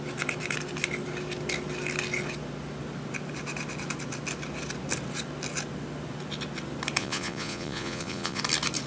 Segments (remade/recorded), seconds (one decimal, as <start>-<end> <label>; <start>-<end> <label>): 0.0-7.0 recorded; 7.0-8.4 remade; 8.4-8.9 recorded